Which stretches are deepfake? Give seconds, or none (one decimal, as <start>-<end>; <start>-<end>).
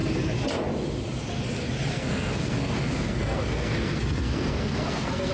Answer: 1.9-5.3